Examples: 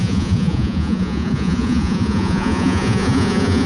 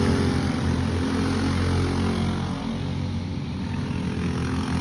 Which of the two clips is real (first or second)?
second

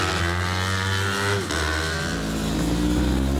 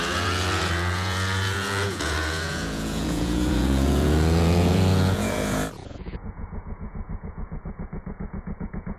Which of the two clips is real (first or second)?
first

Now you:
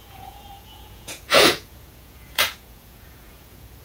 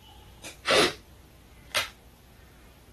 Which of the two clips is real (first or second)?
second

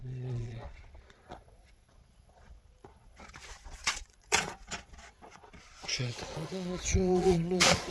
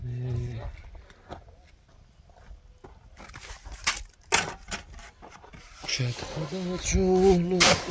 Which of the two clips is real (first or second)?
second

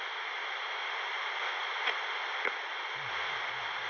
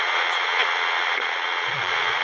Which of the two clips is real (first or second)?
first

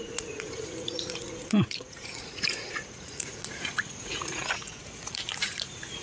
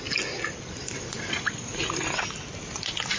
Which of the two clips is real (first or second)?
second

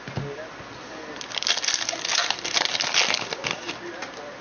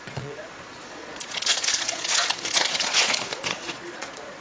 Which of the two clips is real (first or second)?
first